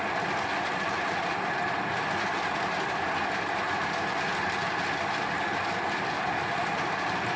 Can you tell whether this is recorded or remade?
recorded